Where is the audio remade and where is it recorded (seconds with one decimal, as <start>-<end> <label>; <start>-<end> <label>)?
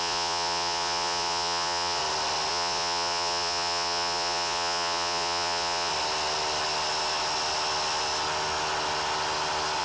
0.0-2.0 remade; 2.0-2.5 recorded; 2.5-5.9 remade; 5.9-9.8 recorded